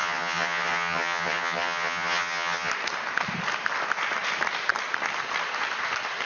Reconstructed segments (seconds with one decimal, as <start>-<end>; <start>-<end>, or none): 0.0-2.7